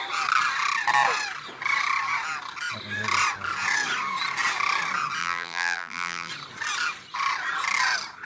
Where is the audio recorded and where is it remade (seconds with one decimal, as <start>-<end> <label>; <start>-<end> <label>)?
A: 0.0-5.2 recorded; 5.2-6.3 remade; 6.3-8.2 recorded